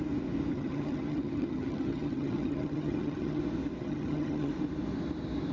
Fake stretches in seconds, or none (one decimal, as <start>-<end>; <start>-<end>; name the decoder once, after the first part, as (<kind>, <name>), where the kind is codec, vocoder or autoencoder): 0.5-3.4 (vocoder, HiFi-GAN); 3.8-4.5